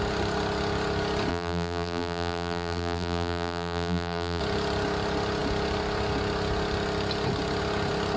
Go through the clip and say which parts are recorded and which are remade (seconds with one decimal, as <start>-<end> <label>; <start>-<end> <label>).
0.0-1.3 recorded; 1.3-4.4 remade; 4.4-8.2 recorded